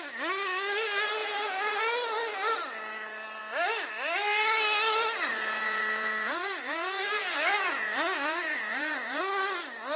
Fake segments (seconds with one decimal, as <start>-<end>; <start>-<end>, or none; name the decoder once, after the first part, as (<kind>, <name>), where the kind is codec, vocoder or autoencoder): 1.2-1.8 (vocoder, Vocos); 5.3-9.2